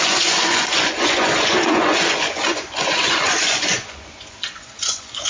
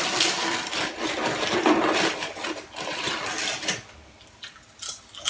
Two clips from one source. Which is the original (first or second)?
second